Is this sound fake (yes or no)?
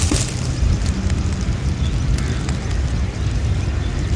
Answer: no